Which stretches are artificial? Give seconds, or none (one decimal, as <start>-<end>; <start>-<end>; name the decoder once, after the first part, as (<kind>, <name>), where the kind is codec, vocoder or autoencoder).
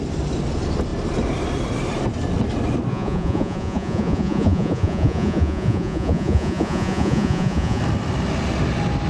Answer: 2.9-7.8 (vocoder, Vocos)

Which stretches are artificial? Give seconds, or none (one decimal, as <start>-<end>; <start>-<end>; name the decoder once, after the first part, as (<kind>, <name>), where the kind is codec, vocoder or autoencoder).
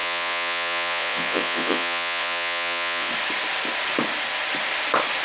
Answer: 0.0-3.1 (vocoder, Vocos)